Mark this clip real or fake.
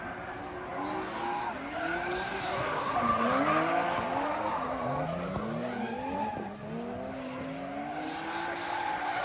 real